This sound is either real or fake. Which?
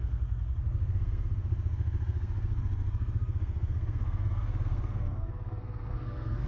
fake